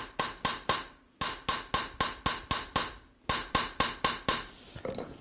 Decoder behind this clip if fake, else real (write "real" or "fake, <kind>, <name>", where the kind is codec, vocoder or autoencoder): real